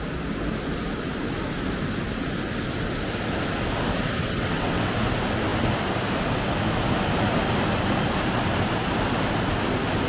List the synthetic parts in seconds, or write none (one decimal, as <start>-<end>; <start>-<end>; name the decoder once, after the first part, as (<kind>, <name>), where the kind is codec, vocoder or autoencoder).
4.2-4.9 (vocoder, WaveNeXt)